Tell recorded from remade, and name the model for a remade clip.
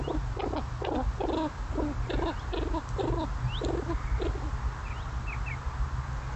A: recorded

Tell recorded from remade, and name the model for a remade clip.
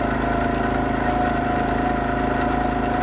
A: recorded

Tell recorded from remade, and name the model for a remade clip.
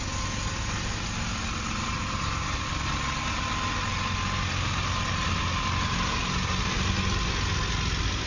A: recorded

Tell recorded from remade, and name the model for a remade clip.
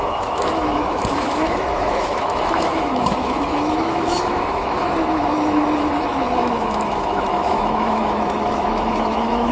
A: remade, autoencoder, DAC-VAE